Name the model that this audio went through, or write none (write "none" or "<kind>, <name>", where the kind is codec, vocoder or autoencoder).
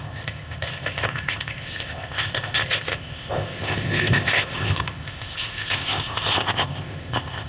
codec, ZipCodec